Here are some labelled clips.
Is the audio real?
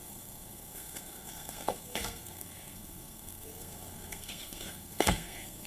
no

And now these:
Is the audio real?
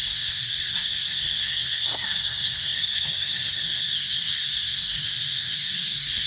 no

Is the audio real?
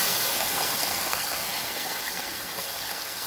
no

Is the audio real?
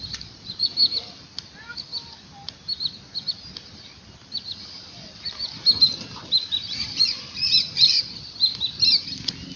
yes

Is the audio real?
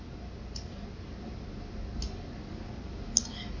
yes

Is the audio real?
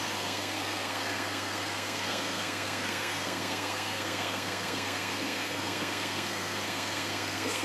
no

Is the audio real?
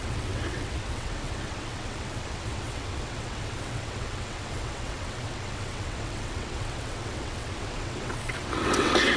no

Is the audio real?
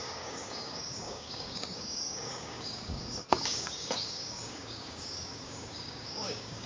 no